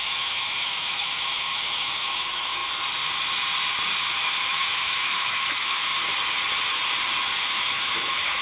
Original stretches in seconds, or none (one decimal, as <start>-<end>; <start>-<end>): 2.6-4.1; 5.9-7.5